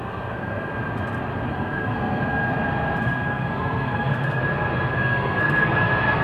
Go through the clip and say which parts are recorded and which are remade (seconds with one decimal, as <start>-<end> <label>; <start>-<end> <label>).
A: 0.0-0.7 remade; 0.7-1.5 recorded; 1.5-2.4 remade; 2.4-3.0 recorded; 3.0-4.4 remade; 4.4-4.9 recorded; 4.9-6.2 remade